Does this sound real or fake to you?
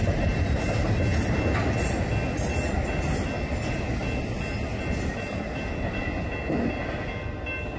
real